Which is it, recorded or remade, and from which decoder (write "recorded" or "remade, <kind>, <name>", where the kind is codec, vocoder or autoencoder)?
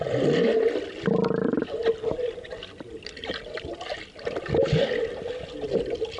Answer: recorded